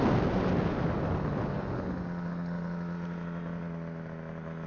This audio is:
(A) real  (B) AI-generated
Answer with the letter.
A